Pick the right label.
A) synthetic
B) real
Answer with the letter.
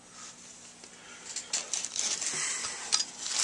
B